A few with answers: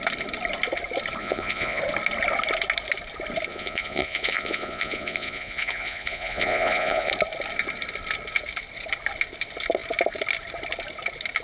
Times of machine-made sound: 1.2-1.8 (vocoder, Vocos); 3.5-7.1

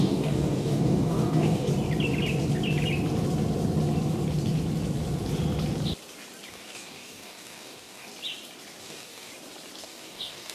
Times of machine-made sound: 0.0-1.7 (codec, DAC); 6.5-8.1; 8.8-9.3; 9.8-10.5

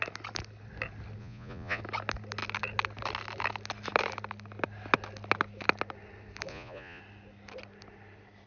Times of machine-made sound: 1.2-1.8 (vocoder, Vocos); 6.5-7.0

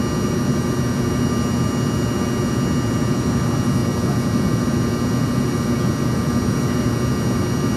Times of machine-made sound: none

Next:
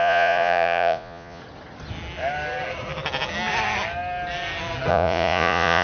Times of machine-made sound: 0.0-1.4 (vocoder, Vocos); 4.9-5.8

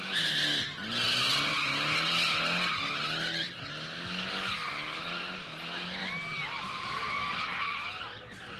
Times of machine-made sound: none

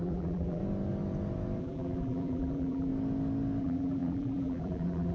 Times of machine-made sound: 0.0-0.6 (vocoder, BigVGAN v2); 1.6-2.9; 3.6-5.1

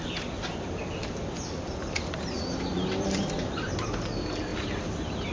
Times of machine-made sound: 2.7-3.8 (vocoder, BigVGAN v2); 4.5-5.3